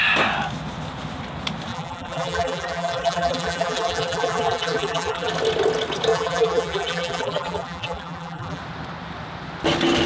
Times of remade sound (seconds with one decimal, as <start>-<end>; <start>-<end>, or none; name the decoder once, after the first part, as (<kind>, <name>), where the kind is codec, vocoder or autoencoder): 1.7-5.3 (vocoder, BigVGAN v2); 6.1-8.6